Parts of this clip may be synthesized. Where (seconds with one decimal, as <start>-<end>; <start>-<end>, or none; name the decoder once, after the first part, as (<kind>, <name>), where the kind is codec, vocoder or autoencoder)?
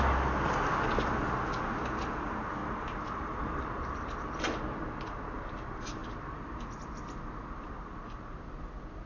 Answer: 2.6-4.4 (vocoder, BigVGAN v2)